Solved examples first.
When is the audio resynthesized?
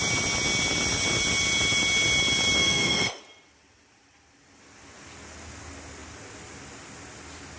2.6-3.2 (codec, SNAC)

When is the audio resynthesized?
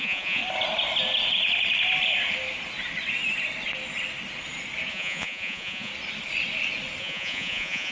0.0-0.4 (vocoder, Vocos); 4.9-5.9; 7.0-7.9